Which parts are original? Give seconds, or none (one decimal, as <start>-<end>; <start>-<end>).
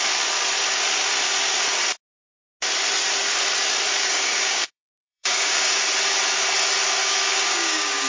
0.0-4.0; 5.8-7.0